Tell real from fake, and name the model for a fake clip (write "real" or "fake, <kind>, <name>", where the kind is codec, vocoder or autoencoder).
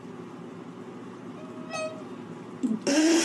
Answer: real